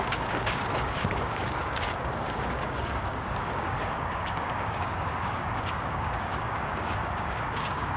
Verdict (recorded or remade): remade